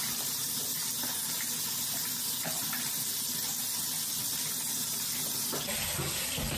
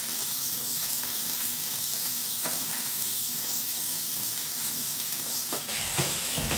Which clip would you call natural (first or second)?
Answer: first